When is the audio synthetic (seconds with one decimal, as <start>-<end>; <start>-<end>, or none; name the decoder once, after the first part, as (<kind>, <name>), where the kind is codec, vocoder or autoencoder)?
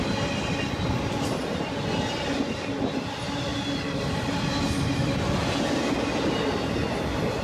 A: none